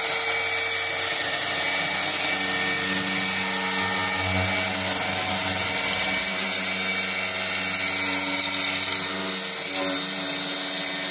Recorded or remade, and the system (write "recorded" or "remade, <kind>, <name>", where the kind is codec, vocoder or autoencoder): recorded